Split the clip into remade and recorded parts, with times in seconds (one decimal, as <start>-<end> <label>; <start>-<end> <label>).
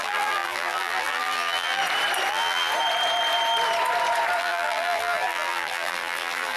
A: 0.0-1.8 remade; 1.8-2.3 recorded; 2.3-2.7 remade; 2.7-4.4 recorded; 4.4-6.6 remade